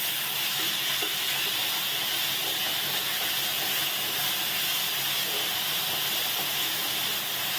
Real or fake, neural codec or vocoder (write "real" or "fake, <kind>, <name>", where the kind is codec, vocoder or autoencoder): real